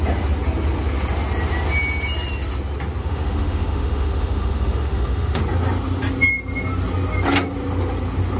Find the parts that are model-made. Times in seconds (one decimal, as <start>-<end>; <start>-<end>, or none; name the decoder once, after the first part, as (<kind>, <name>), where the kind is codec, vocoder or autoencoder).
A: 3.0-5.4 (autoencoder, DAC-VAE)